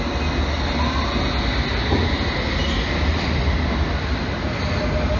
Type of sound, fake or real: real